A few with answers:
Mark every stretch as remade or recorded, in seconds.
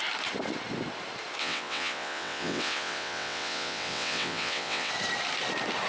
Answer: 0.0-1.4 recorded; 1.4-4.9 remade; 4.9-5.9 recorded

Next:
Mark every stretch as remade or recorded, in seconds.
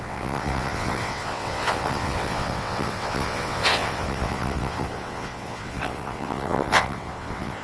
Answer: 0.0-7.6 remade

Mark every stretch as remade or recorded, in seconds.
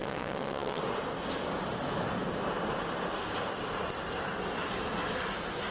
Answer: 0.0-0.8 remade; 0.8-5.7 recorded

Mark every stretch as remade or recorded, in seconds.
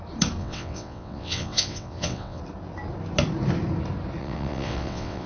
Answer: 0.0-0.4 recorded; 0.4-2.4 remade; 2.4-4.2 recorded; 4.2-5.3 remade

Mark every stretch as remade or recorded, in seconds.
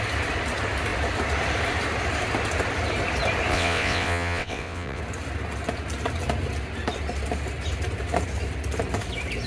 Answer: 0.0-3.5 recorded; 3.5-5.0 remade; 5.0-9.5 recorded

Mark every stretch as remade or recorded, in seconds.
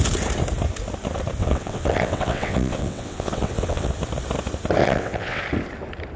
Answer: 0.0-1.4 recorded; 1.4-3.9 remade; 3.9-4.8 recorded; 4.8-5.4 remade; 5.4-6.2 recorded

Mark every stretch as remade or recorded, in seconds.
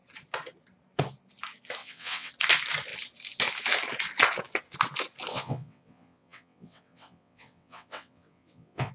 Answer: 0.0-1.8 recorded; 1.8-2.3 remade; 2.3-5.3 recorded; 5.3-8.9 remade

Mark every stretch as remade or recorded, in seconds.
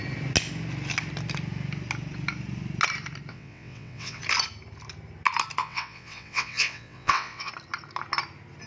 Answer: 0.0-3.3 recorded; 3.3-4.2 remade; 4.2-5.6 recorded; 5.6-7.5 remade; 7.5-8.7 recorded